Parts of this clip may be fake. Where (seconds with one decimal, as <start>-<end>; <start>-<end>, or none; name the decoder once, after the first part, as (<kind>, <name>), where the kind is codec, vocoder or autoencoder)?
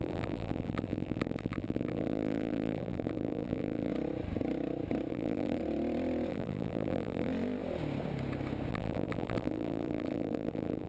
0.0-3.9 (vocoder, BigVGAN v2); 5.1-5.6; 6.3-7.3; 8.7-10.9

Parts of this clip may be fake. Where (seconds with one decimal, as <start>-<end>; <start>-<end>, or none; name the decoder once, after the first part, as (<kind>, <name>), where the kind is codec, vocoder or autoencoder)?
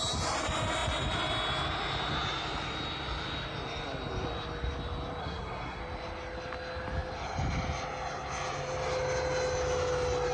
5.2-5.8 (codec, SNAC)